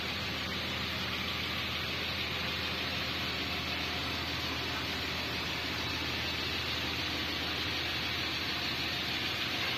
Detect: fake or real real